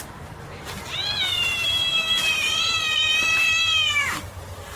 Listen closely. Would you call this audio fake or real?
fake